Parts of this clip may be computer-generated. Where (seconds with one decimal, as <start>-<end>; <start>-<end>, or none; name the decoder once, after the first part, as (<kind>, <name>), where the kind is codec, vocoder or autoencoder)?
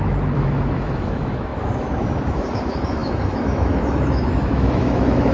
0.0-5.3 (autoencoder, DAC-VAE)